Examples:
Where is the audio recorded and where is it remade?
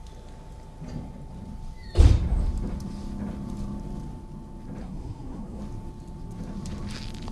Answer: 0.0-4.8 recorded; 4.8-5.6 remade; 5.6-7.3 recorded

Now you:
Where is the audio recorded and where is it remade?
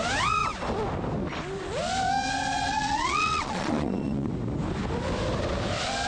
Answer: 0.0-2.7 recorded; 2.7-4.3 remade; 4.3-6.1 recorded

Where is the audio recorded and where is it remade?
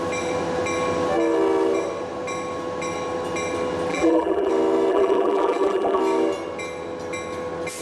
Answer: 0.0-3.9 recorded; 3.9-4.5 remade; 4.5-4.9 recorded; 4.9-6.0 remade; 6.0-7.8 recorded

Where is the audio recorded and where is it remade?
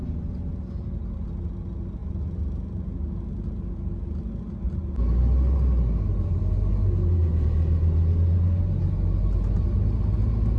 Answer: 0.0-10.6 recorded